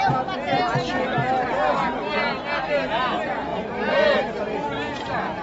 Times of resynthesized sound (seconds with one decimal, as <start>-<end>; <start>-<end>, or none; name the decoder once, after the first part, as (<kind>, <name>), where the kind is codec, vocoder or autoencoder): 3.5-4.2 (vocoder, BigVGAN v2)